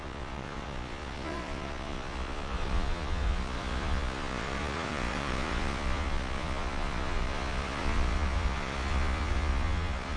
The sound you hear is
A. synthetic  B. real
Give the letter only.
A